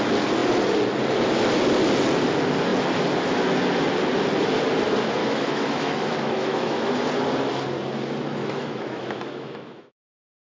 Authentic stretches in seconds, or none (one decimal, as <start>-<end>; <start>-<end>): 0.0-5.2; 6.9-8.4